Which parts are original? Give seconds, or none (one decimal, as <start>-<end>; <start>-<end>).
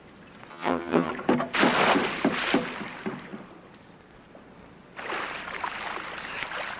0.0-0.5; 1.1-6.8